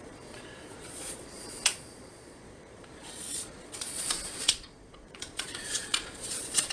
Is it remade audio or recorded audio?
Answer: remade